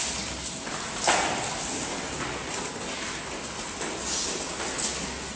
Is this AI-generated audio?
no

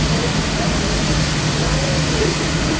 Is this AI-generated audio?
no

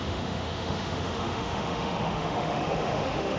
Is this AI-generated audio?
yes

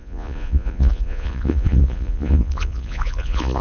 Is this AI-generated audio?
yes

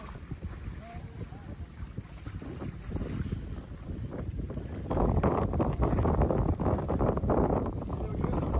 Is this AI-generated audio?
yes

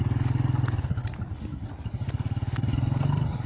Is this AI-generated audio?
no